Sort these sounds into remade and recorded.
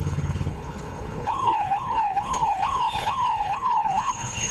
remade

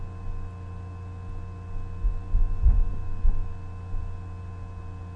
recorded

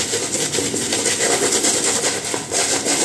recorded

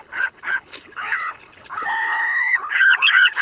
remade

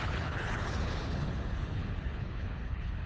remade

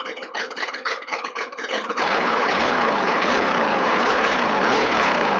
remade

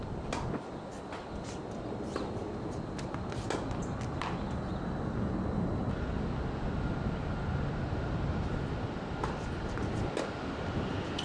recorded